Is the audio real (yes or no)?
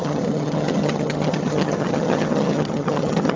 no